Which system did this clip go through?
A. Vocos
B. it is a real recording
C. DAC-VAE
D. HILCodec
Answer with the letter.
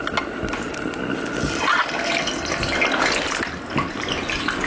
B